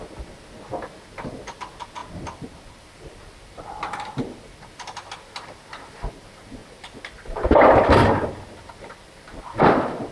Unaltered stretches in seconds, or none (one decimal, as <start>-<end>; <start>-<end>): 0.0-2.0; 4.6-6.6; 9.4-10.1